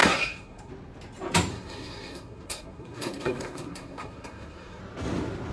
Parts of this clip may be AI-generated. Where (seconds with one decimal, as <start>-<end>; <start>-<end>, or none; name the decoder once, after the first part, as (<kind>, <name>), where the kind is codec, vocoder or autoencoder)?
0.0-0.7 (codec, SNAC); 1.5-4.8